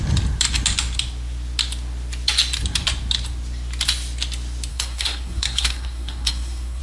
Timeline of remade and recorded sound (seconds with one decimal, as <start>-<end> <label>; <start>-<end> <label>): 0.0-4.7 recorded; 4.7-6.8 remade